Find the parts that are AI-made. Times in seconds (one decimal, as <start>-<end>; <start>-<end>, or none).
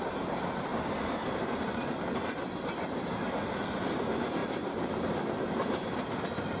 4.4-5.9